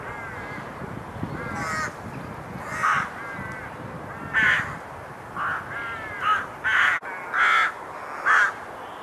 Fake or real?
real